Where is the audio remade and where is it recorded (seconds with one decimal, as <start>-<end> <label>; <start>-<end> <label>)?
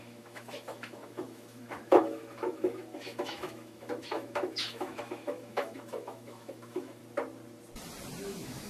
0.0-7.0 remade; 7.0-8.2 recorded; 8.2-8.7 remade